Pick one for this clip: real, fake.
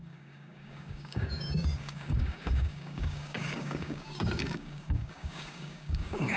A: fake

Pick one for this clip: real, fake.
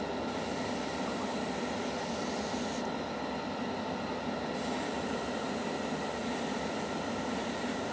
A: real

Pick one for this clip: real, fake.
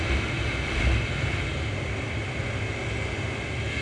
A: real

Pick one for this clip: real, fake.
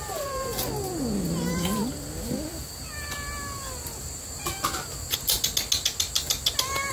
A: real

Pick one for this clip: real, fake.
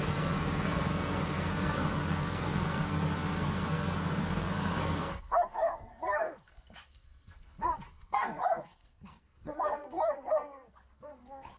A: fake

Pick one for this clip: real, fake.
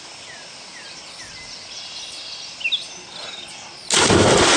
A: real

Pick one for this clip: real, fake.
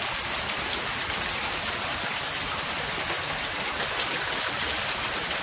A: real